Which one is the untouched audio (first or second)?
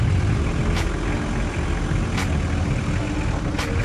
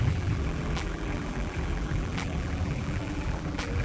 first